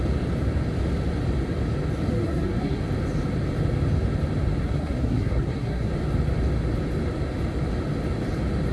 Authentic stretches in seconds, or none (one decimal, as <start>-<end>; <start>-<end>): 0.0-2.1; 2.8-4.6; 5.9-8.7